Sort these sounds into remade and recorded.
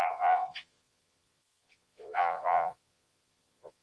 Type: remade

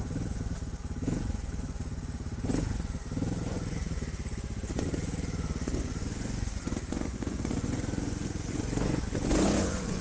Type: remade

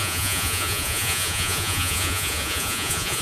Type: remade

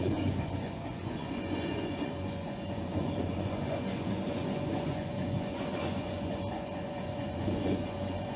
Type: remade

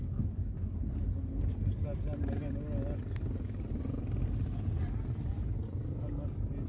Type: recorded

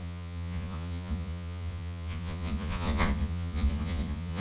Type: remade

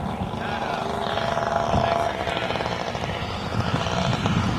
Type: recorded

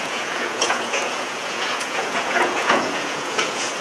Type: remade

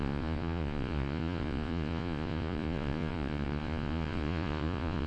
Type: remade